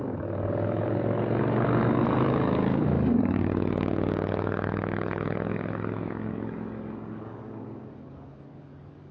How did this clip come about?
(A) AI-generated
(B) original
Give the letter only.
A